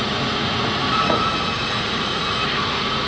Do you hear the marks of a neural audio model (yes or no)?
yes